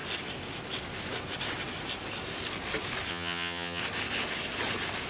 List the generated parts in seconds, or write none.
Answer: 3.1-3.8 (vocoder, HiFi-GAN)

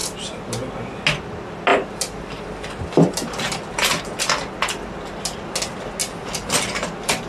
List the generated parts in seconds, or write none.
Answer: 1.7-4.0 (vocoder, BigVGAN v2)

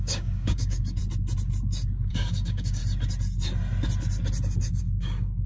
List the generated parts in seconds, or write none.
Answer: 0.0-1.0 (codec, DAC); 2.1-2.8; 4.8-5.5

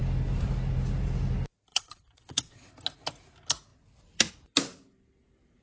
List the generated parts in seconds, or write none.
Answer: 1.7-2.7 (vocoder, WaveNeXt)

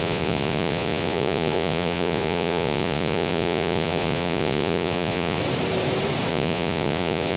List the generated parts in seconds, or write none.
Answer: 0.0-5.4 (vocoder, Vocos); 6.3-7.4

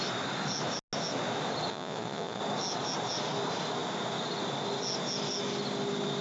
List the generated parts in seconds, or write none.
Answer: 1.7-2.4 (vocoder, Vocos)

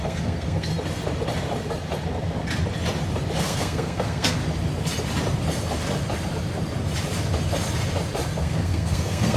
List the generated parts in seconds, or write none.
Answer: 0.0-0.7 (codec, SNAC); 3.4-4.4; 8.4-9.4

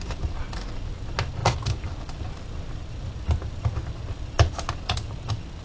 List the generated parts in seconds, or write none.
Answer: none